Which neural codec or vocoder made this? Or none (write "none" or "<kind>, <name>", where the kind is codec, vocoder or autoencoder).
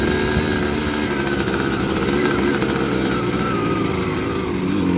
none